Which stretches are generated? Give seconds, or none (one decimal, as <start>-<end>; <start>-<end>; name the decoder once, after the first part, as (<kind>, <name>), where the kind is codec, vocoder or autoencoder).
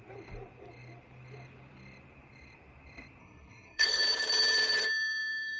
3.2-4.0 (codec, SNAC)